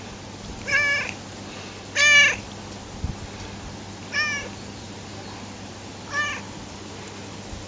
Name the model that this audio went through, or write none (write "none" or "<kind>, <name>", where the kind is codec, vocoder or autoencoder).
none